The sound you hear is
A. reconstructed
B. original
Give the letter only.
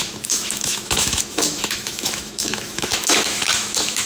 A